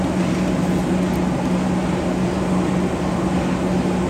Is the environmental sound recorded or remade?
recorded